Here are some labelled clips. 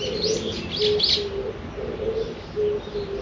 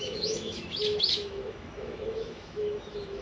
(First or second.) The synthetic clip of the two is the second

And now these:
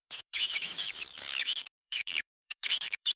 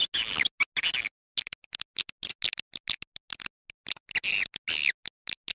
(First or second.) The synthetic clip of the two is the first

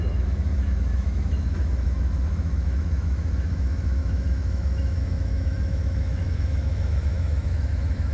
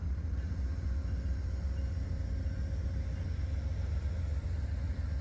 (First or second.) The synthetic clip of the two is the first